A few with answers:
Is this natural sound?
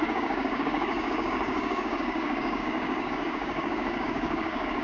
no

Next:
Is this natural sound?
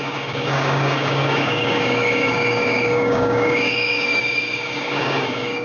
no